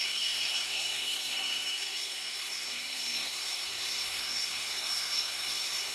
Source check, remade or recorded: remade